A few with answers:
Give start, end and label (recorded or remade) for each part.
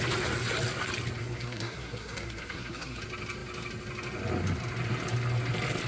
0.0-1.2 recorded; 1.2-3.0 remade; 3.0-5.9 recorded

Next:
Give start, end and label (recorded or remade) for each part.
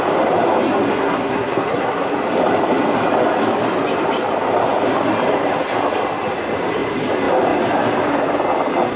0.0-0.9 recorded; 0.9-2.1 remade; 2.1-9.0 recorded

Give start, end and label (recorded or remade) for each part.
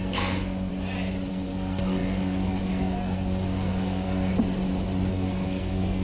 0.0-0.7 remade; 0.7-1.3 recorded; 1.3-4.3 remade; 4.3-5.1 recorded; 5.1-6.0 remade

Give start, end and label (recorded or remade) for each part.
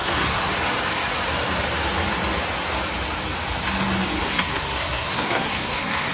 0.0-0.5 remade; 0.5-4.2 recorded; 4.2-6.1 remade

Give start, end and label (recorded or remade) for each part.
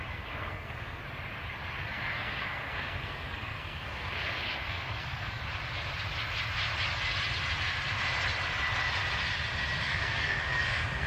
0.0-1.0 remade; 1.0-1.8 recorded; 1.8-5.4 remade; 5.4-9.8 recorded; 9.8-11.1 remade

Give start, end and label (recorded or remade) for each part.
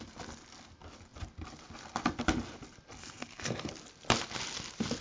0.0-3.0 recorded; 3.0-3.7 remade; 3.7-5.0 recorded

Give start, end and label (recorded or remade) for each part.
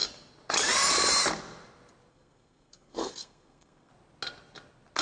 0.0-2.1 recorded; 2.1-3.9 remade; 3.9-5.0 recorded